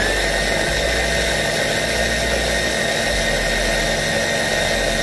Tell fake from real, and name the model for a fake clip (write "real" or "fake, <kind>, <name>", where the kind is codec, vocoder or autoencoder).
real